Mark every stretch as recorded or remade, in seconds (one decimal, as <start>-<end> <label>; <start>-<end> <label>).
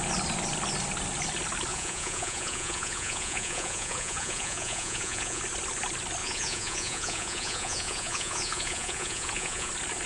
0.0-1.7 recorded; 1.7-5.4 remade; 5.4-6.2 recorded; 6.2-9.7 remade; 9.7-10.1 recorded